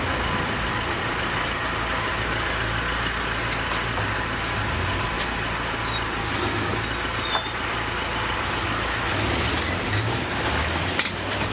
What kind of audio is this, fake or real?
real